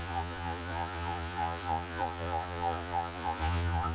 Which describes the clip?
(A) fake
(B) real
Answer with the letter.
A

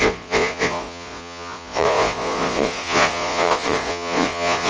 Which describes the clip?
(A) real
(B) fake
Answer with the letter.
B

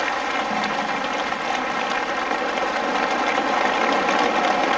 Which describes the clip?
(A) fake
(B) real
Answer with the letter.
B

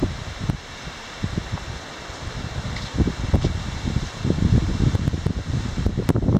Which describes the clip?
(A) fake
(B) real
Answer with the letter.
B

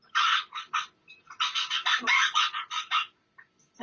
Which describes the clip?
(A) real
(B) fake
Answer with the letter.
A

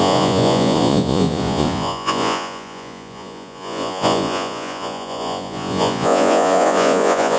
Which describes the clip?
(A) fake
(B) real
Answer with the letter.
A